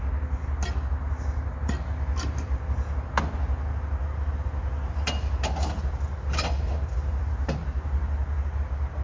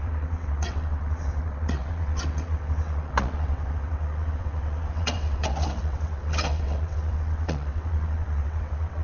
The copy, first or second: second